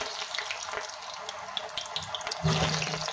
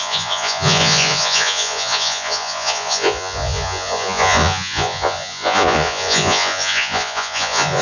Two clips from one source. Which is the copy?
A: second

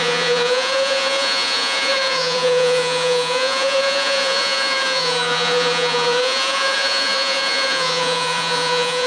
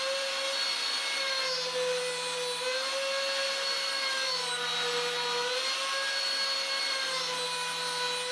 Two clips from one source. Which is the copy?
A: first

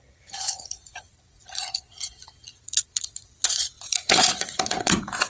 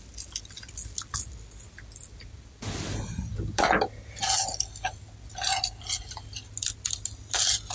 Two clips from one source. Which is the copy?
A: first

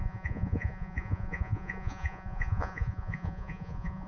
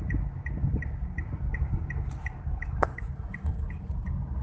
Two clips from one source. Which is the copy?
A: first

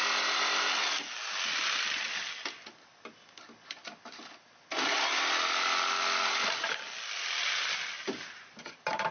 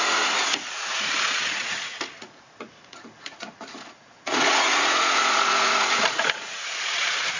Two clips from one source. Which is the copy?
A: second